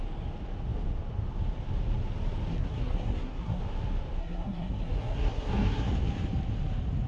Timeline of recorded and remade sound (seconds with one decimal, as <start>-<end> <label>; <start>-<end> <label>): 0.0-2.5 recorded; 2.5-3.6 remade; 3.6-4.2 recorded; 4.2-5.9 remade; 5.9-7.1 recorded